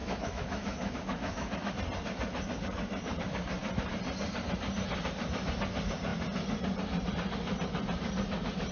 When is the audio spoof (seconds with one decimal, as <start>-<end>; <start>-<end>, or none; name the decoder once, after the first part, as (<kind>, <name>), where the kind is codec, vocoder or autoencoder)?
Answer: 0.0-1.7 (autoencoder, DAC-VAE)